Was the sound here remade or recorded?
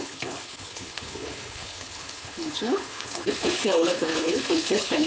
remade